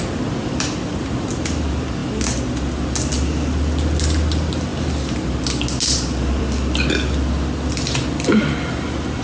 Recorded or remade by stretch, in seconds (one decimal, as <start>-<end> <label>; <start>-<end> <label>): 0.0-9.2 recorded